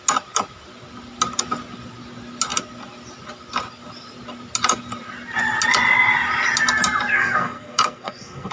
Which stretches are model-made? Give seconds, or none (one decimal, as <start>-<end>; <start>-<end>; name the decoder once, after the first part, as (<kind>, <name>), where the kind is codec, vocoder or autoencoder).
7.1-8.5 (codec, SNAC)